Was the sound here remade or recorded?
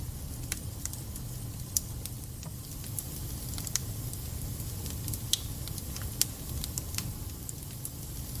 recorded